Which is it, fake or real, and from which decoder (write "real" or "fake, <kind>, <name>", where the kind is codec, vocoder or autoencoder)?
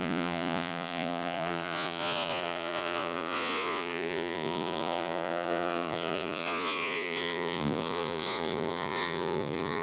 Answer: fake, vocoder, Vocos